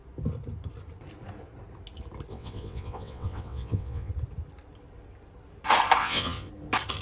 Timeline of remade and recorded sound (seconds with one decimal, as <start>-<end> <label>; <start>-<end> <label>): 0.0-2.3 recorded; 2.3-4.1 remade; 4.1-6.0 recorded; 6.0-6.5 remade; 6.5-7.0 recorded